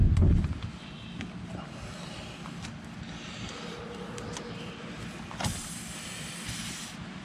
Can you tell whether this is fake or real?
real